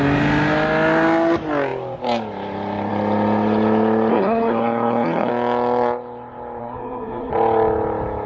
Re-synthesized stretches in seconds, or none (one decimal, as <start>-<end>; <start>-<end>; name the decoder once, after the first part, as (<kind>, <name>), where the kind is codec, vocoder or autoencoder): 4.1-5.3 (codec, SNAC); 6.6-7.3